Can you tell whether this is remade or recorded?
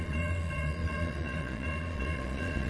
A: remade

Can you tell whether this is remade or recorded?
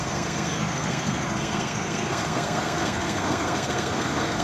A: remade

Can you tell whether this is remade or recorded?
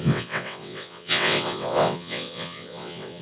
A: remade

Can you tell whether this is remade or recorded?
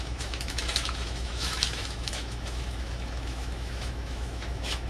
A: remade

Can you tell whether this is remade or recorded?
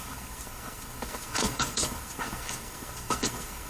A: remade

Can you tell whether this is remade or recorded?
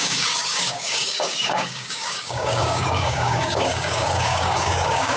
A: remade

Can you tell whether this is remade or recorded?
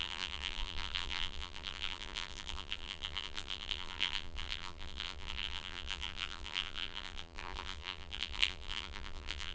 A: remade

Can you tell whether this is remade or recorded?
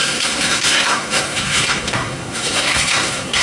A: remade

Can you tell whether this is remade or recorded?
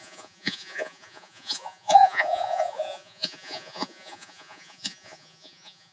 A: remade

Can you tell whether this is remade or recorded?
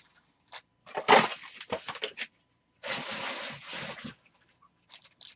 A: recorded